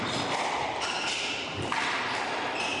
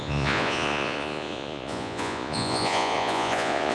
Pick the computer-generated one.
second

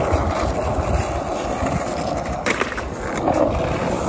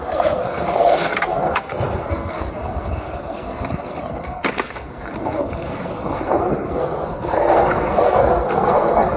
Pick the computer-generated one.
second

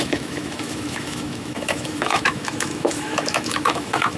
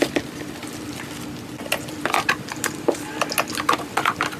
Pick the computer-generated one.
first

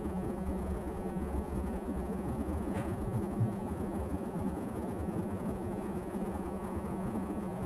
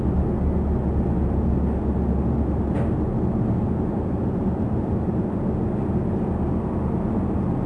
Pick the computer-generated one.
first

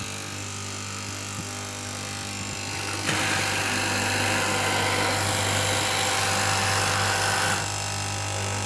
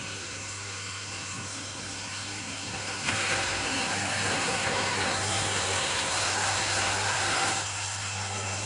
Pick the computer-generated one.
second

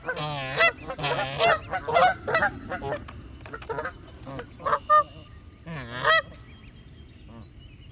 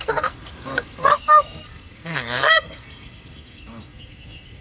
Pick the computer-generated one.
second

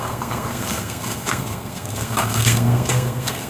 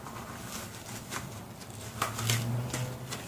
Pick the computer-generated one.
first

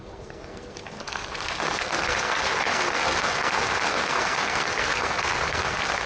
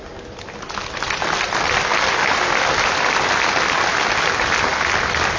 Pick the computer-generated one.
first